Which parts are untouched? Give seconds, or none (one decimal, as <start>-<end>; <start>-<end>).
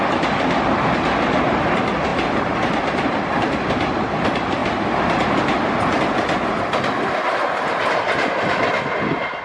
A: 0.0-9.4